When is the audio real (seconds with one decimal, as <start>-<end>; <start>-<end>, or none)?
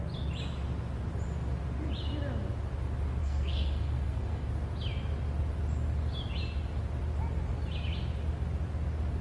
0.0-3.2; 4.5-9.2